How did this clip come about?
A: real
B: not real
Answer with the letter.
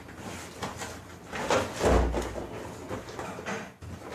A